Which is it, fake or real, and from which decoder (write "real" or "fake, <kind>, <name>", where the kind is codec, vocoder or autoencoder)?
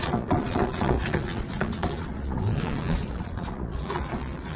fake, vocoder, Vocos